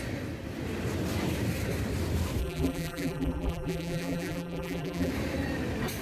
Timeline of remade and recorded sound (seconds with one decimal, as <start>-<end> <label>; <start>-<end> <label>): 0.0-2.4 recorded; 2.4-5.1 remade; 5.1-6.0 recorded